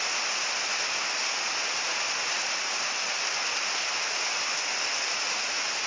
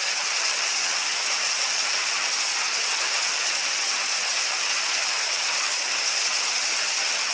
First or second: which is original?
first